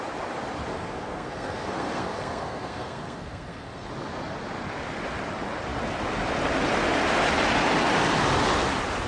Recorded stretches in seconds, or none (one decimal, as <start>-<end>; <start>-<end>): 0.0-0.7; 3.9-9.1